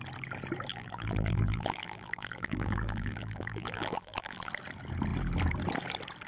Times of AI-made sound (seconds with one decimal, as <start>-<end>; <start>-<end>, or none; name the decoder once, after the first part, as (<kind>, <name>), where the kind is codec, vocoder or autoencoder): 0.7-4.5 (vocoder, BigVGAN v2)